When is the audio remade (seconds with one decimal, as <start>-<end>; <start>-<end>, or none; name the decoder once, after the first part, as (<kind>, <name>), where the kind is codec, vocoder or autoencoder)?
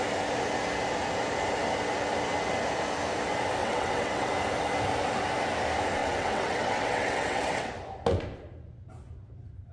3.6-4.3 (vocoder, WaveNeXt); 6.0-7.7